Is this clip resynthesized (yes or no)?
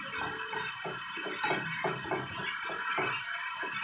no